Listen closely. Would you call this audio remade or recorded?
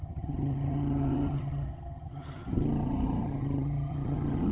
remade